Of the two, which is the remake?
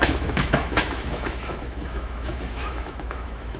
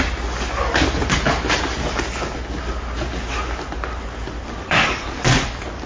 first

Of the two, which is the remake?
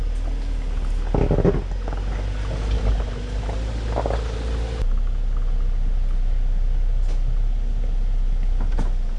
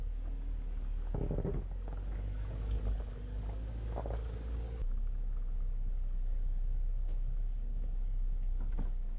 second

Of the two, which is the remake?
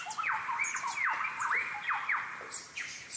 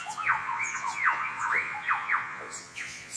second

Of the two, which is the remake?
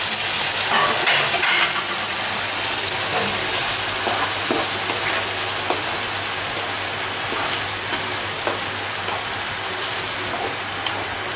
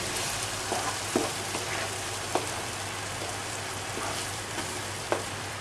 second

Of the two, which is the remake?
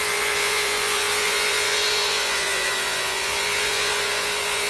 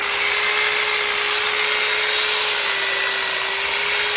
first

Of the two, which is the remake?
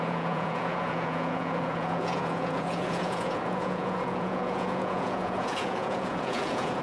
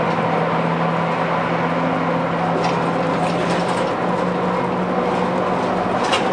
first